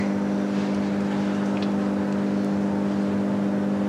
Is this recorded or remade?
recorded